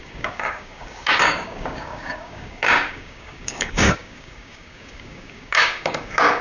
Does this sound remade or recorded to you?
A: remade